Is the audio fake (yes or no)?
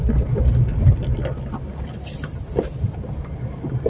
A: no